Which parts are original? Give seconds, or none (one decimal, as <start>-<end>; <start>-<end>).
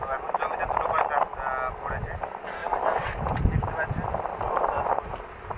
0.0-2.6; 4.9-5.6